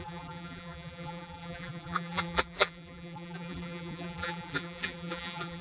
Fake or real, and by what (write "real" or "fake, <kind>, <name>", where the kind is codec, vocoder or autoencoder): fake, vocoder, BigVGAN v2